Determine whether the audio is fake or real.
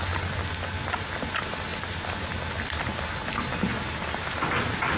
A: real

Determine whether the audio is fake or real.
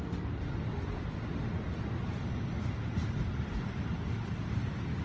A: real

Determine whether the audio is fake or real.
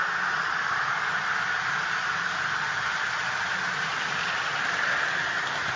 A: real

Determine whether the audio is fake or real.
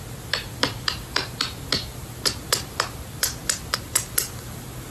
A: real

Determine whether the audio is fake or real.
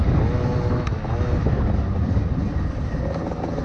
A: real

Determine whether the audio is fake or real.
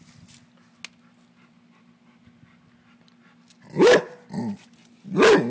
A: real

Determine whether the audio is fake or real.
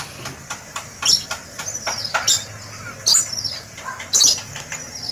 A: real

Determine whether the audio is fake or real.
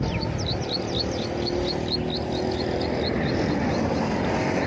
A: real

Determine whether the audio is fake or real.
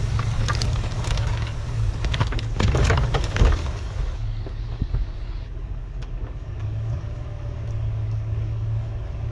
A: fake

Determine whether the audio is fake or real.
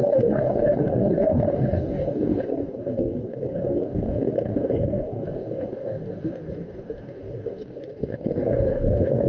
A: fake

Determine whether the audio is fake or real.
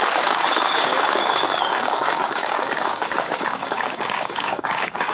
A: fake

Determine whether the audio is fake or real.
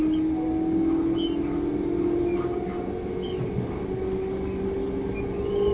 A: real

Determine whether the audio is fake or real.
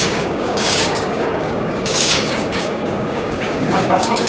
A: fake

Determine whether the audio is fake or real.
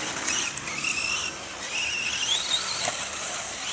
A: real